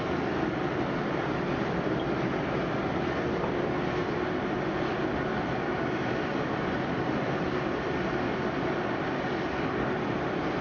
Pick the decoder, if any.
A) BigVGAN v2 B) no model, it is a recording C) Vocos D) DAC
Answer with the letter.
A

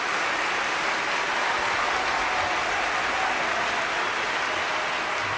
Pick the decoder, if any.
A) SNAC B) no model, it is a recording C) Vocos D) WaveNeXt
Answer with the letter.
B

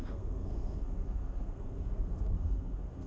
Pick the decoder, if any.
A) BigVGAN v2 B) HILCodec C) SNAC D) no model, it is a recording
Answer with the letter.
C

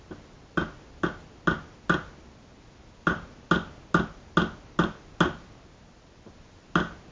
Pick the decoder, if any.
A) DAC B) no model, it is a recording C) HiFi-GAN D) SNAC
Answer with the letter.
B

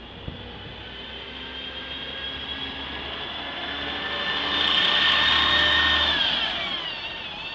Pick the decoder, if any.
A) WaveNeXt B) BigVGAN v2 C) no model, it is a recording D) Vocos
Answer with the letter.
C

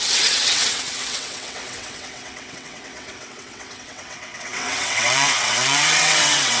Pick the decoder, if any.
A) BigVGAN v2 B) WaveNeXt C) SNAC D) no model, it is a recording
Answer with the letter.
B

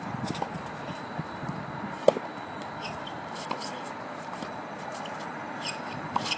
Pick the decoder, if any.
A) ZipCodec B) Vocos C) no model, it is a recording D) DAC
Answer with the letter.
C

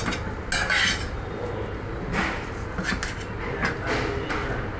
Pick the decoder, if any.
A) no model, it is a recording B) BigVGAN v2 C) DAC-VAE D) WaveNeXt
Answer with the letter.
A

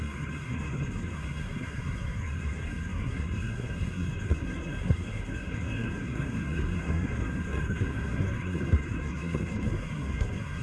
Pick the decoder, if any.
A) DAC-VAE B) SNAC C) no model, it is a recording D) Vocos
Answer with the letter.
B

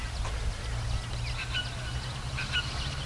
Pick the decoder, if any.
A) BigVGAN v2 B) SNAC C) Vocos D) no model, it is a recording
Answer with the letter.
D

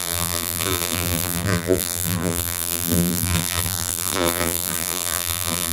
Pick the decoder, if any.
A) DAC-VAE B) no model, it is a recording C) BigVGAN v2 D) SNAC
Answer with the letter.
C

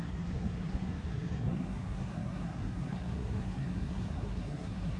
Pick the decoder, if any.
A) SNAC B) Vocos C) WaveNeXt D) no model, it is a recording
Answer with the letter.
A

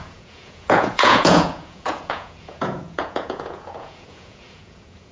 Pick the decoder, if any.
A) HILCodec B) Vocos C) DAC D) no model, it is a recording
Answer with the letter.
B